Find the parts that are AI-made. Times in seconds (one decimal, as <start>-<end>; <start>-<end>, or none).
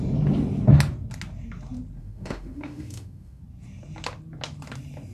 2.0-3.4